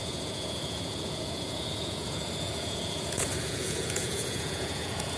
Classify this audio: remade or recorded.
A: remade